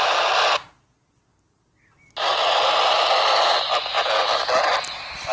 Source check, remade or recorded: recorded